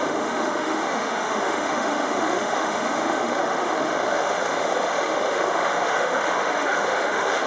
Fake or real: fake